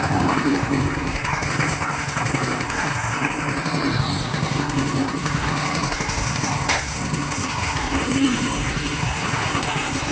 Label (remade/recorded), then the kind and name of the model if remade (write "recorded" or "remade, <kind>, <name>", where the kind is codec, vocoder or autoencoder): remade, codec, SNAC